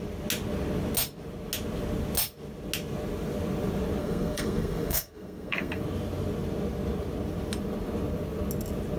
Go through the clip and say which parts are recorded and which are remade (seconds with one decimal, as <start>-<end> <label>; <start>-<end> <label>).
0.0-4.0 recorded; 4.0-5.8 remade; 5.8-9.0 recorded